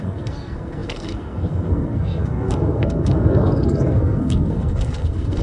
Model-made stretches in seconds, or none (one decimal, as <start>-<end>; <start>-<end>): 0.0-5.4